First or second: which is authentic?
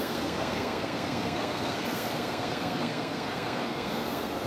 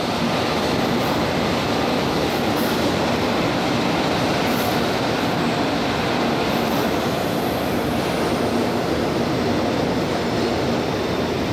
second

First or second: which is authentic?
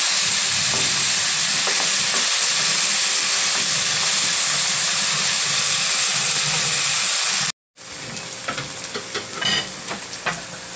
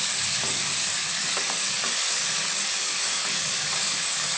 first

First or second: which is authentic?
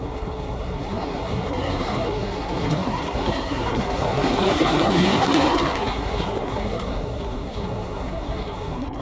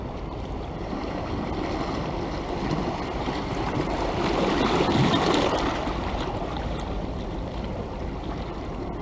second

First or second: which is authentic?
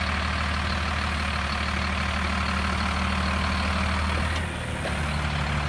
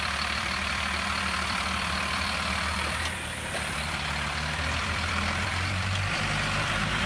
first